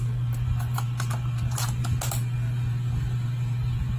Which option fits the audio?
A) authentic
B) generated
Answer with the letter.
A